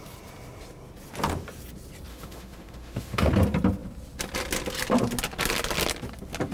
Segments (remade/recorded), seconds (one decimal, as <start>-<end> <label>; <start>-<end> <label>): 0.0-2.1 recorded; 2.1-3.3 remade; 3.3-6.5 recorded